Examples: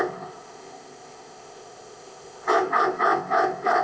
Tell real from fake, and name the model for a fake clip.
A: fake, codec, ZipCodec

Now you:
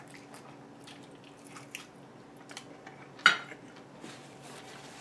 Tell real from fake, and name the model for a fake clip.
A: real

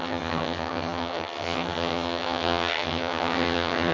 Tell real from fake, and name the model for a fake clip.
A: fake, vocoder, HiFi-GAN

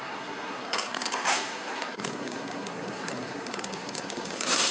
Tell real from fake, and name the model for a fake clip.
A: fake, codec, SNAC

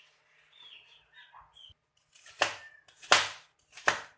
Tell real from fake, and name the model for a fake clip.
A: real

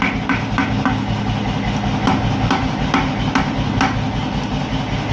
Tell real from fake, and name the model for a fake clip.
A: real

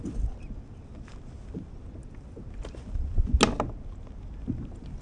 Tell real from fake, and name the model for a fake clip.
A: real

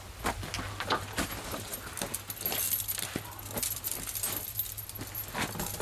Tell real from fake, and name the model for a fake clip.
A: real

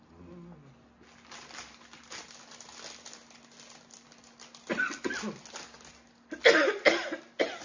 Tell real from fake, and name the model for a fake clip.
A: real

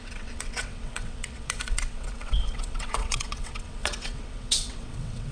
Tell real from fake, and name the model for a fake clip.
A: fake, vocoder, WaveNeXt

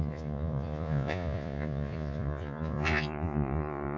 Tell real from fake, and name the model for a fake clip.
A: fake, vocoder, Vocos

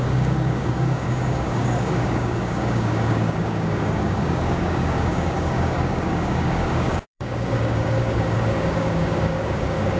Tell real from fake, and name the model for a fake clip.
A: fake, codec, DAC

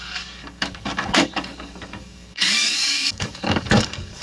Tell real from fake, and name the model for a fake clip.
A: fake, codec, DAC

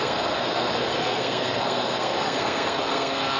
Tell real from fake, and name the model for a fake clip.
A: fake, codec, SNAC